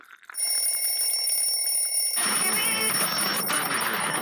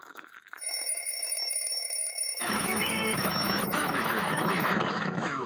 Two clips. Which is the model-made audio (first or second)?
second